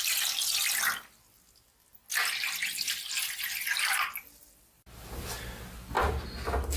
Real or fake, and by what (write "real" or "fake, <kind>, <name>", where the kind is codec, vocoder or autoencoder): real